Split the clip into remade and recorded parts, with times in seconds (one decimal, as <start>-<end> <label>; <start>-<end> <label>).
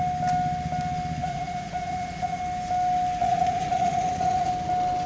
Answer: 0.0-1.2 recorded; 1.2-2.4 remade; 2.4-3.2 recorded; 3.2-4.5 remade; 4.5-5.1 recorded